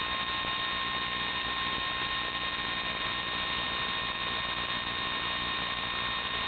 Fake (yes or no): no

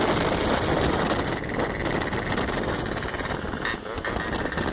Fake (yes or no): no